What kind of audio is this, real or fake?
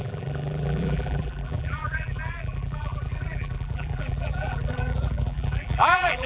fake